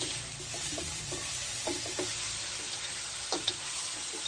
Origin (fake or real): real